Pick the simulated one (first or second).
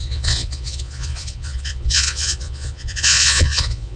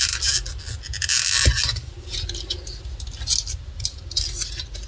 first